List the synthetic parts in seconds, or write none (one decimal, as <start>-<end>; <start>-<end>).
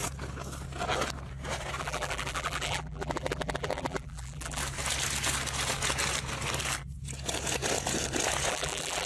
1.8-4.6; 8.5-9.1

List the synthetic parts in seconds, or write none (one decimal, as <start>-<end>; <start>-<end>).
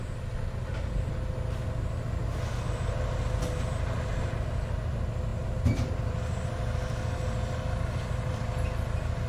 none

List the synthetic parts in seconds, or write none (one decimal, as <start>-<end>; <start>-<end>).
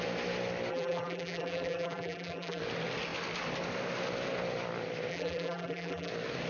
0.7-2.6; 5.1-6.1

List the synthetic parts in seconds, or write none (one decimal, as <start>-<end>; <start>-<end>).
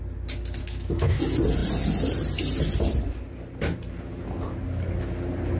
0.6-1.2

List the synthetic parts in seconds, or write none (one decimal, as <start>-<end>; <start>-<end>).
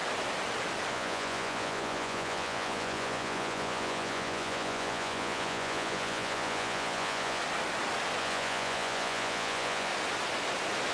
0.9-7.4; 8.2-9.9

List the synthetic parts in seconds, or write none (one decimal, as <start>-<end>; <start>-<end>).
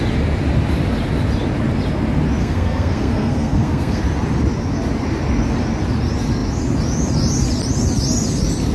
2.4-4.0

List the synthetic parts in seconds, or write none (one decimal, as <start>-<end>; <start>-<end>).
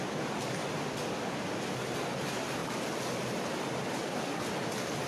none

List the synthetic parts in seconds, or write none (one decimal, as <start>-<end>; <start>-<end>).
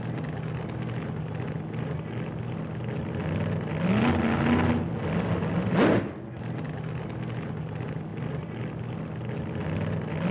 8.1-8.7